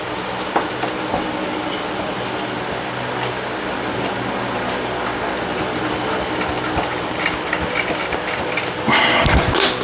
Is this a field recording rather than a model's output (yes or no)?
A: yes